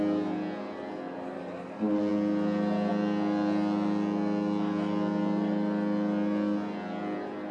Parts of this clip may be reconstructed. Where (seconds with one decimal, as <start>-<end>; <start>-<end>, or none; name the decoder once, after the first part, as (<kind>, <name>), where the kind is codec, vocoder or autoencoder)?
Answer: none